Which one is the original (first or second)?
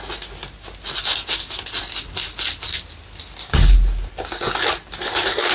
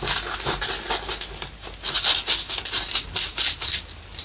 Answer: first